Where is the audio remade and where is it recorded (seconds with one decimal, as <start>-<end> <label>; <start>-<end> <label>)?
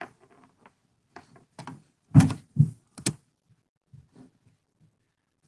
0.0-5.5 recorded